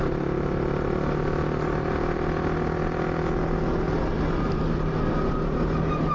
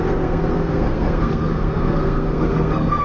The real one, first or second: first